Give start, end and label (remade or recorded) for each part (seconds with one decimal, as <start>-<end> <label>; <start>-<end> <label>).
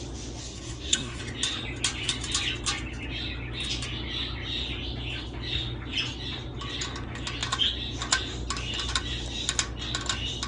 0.0-0.4 recorded; 0.4-1.2 remade; 1.2-10.5 recorded